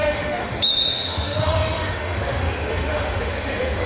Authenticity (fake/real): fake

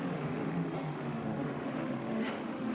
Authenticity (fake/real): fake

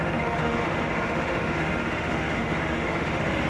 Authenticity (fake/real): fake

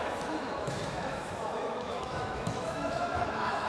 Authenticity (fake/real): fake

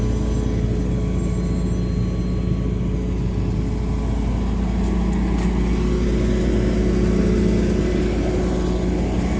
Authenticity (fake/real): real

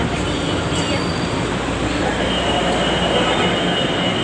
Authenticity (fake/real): real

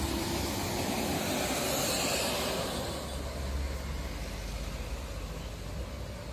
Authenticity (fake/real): real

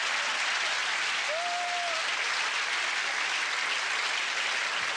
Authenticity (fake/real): real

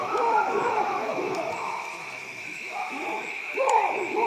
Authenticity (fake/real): fake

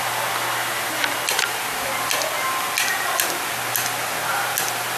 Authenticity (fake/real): real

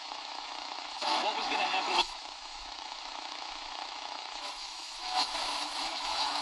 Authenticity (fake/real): fake